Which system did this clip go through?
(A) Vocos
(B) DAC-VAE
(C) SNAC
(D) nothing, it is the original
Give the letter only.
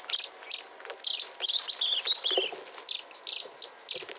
D